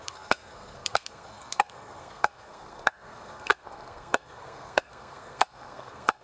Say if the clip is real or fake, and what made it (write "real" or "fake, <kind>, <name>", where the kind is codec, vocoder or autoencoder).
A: fake, codec, SNAC